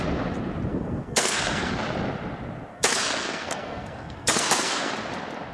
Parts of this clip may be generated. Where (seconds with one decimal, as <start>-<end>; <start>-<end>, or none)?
0.7-1.7; 2.7-4.9